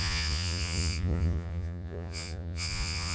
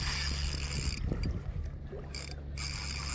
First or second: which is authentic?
second